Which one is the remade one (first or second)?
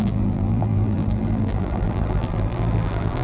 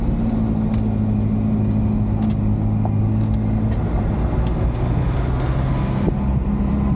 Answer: first